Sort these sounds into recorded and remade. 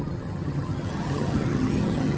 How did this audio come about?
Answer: remade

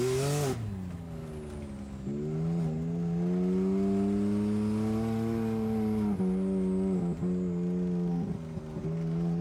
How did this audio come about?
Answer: recorded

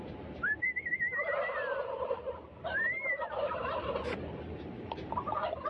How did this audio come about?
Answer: remade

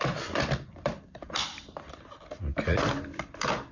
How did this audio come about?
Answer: remade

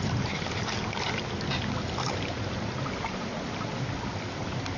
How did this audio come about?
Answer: recorded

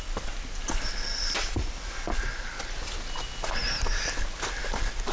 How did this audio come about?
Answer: recorded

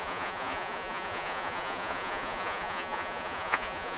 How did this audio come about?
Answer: remade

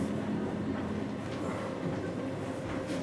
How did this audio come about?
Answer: recorded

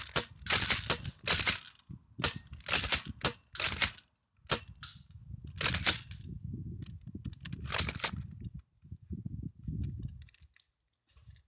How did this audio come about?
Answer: recorded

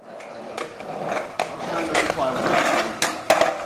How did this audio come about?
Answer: recorded